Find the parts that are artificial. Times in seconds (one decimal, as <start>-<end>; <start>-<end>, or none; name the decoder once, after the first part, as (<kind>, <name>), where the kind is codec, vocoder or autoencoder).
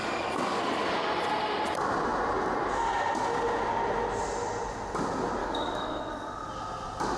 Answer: 5.4-6.0 (codec, DAC)